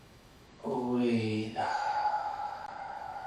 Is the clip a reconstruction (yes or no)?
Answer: yes